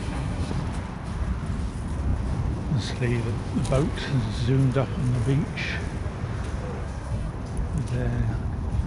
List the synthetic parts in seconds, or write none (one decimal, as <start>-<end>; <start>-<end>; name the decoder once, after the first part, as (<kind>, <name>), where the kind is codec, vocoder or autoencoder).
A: 0.0-0.5 (codec, SNAC); 6.8-7.3